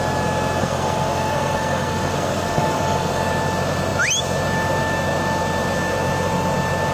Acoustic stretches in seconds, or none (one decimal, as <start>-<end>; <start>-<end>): 0.0-0.6; 3.3-6.9